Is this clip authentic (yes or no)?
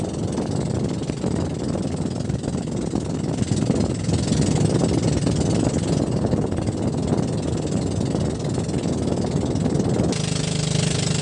yes